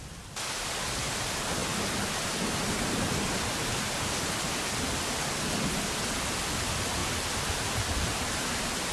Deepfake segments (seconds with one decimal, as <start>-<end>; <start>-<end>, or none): none